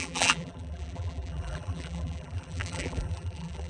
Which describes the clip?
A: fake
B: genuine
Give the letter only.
A